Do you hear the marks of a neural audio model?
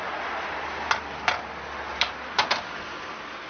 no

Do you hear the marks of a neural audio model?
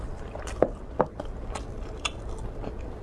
no